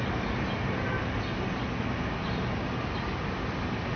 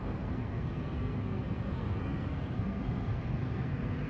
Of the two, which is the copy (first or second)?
second